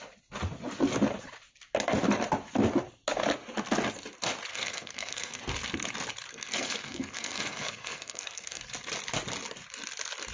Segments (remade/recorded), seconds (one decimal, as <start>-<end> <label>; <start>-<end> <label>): 0.0-4.5 recorded; 4.5-5.4 remade; 5.4-6.3 recorded; 6.3-8.6 remade; 8.6-10.3 recorded